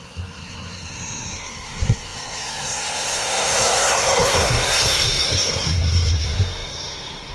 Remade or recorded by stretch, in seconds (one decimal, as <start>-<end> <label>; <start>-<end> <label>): 0.0-7.3 remade